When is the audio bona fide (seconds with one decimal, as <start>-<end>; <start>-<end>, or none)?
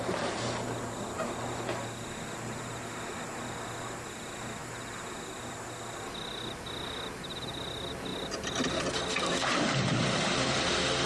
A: 0.0-11.1